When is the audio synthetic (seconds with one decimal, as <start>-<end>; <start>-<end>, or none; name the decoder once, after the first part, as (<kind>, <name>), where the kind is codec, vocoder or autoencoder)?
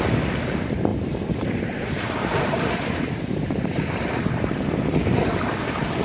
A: 0.9-4.5 (vocoder, BigVGAN v2)